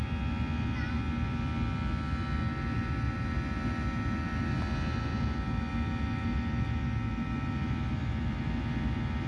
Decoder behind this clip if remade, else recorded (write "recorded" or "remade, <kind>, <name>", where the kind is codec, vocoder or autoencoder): recorded